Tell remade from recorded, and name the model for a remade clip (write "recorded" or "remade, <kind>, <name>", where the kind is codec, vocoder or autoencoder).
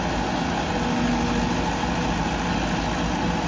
recorded